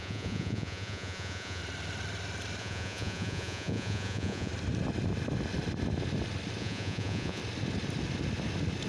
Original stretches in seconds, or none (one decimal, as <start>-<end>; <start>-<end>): 1.6-2.6; 4.5-6.6; 7.4-8.9